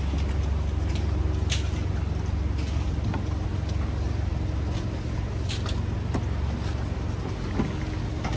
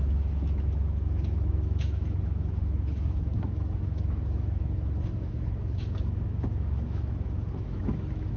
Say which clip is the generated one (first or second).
second